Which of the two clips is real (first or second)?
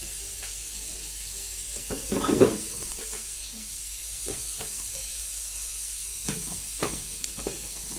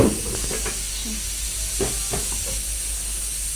second